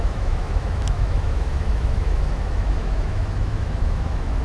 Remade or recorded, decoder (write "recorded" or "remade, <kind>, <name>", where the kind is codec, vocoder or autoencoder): remade, autoencoder, DAC-VAE